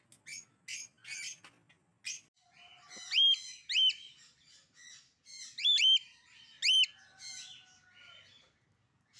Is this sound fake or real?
real